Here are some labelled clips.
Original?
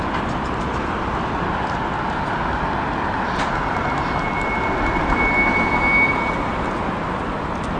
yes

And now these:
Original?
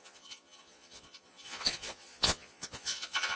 no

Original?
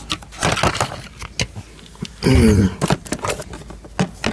yes